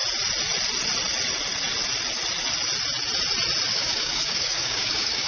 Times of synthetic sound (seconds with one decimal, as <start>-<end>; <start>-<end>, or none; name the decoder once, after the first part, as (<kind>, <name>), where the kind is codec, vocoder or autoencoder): 3.7-5.3 (codec, DAC)